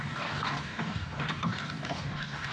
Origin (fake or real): fake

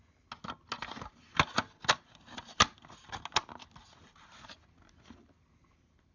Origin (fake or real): real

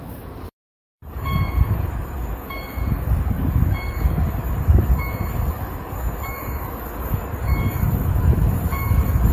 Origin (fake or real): fake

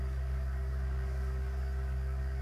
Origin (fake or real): fake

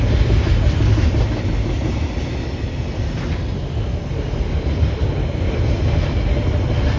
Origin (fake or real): real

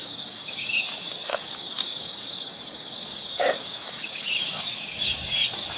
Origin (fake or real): fake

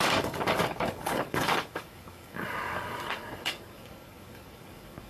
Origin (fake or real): fake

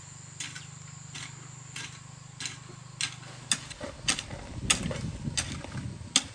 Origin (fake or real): real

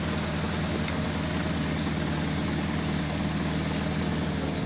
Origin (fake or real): real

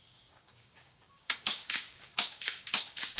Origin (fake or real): fake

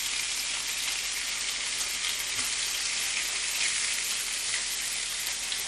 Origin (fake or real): real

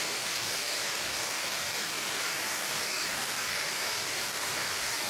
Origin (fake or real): fake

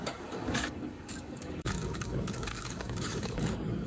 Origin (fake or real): fake